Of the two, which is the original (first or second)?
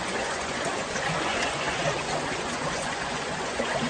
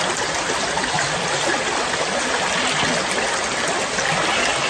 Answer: second